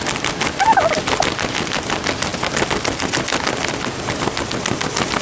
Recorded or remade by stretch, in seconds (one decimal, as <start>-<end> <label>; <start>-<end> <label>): 0.0-5.2 recorded